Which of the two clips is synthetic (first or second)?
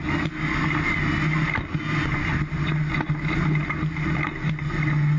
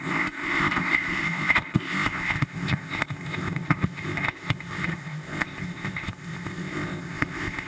second